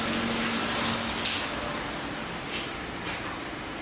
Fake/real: real